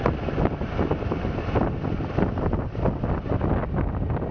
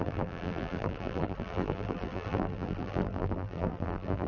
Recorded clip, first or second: first